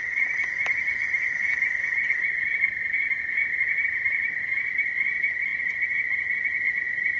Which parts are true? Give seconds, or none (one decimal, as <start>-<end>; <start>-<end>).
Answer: 0.0-7.2